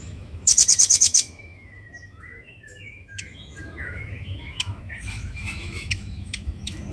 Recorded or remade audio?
remade